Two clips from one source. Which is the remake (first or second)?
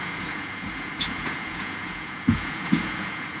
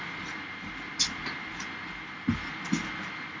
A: first